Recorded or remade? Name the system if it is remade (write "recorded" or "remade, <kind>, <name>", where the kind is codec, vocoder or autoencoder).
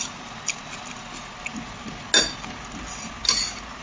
recorded